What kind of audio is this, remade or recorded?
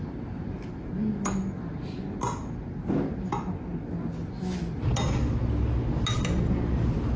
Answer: recorded